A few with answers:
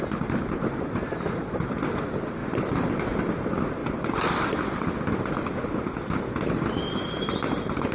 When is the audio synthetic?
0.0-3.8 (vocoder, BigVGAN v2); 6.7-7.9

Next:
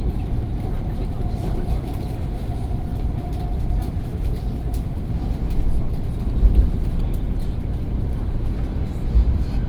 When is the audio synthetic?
0.0-4.1 (vocoder, BigVGAN v2); 6.4-9.7

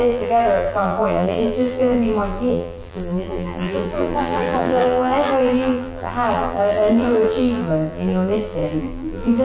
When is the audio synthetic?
0.0-9.4 (vocoder, BigVGAN v2)

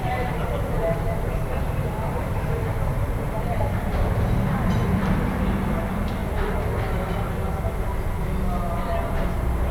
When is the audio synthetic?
0.0-6.2 (vocoder, BigVGAN v2)

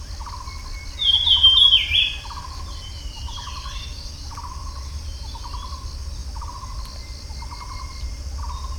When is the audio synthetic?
1.0-5.3 (vocoder, BigVGAN v2)

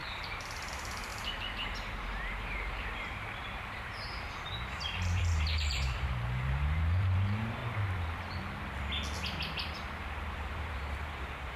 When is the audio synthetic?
0.0-7.6 (vocoder, BigVGAN v2); 10.3-11.6

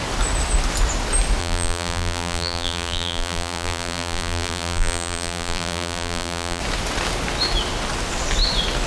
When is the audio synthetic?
1.4-6.6 (vocoder, BigVGAN v2)

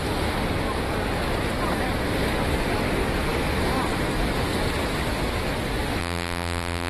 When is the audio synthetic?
6.0-6.9 (vocoder, BigVGAN v2)